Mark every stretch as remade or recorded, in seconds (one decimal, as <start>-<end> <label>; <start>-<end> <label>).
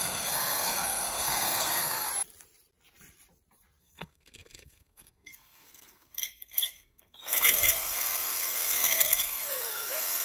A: 0.0-2.1 remade; 2.1-3.8 recorded; 3.8-10.2 remade